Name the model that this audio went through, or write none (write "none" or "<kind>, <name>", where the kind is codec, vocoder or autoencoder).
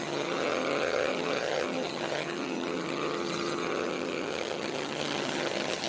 vocoder, HiFi-GAN